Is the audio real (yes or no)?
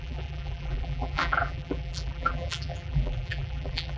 no